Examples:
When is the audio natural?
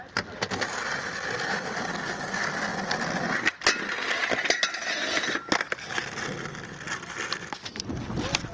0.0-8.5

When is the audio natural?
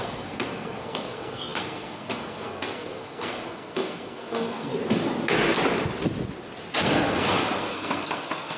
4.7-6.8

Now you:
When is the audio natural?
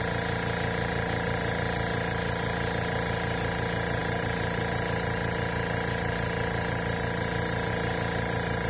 0.0-8.7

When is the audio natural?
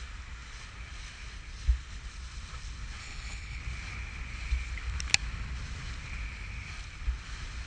0.0-3.0; 3.6-7.7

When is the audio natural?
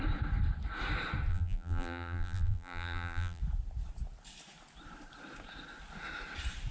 0.0-1.3; 3.4-6.7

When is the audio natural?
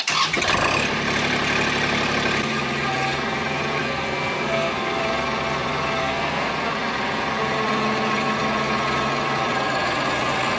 0.0-3.8; 5.0-6.0; 6.5-10.6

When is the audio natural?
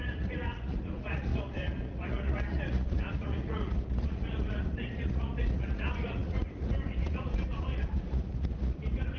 none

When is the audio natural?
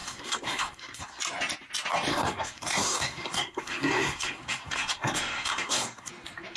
1.2-2.1; 6.1-6.6